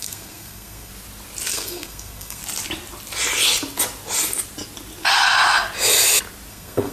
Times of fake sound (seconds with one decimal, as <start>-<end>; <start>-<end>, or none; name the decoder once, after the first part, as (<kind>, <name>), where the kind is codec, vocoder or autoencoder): 0.0-0.9 (codec, SNAC); 1.5-2.4; 6.5-6.9